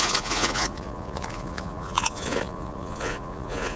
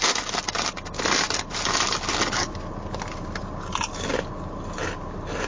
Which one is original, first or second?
second